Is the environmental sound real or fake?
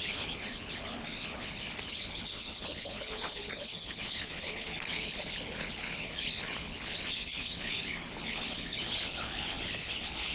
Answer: fake